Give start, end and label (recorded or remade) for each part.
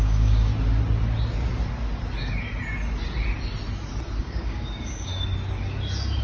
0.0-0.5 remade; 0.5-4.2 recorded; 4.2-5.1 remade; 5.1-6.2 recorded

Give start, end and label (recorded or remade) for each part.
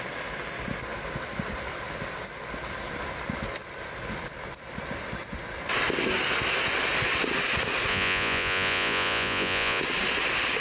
0.0-7.9 recorded; 7.9-9.8 remade; 9.8-10.6 recorded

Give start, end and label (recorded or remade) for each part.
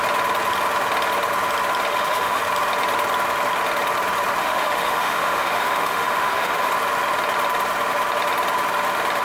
0.0-1.9 recorded; 1.9-2.4 remade; 2.4-4.4 recorded; 4.4-6.7 remade; 6.7-9.2 recorded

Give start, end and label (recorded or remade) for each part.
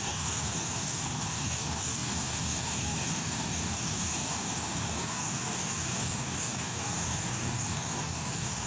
0.0-8.7 remade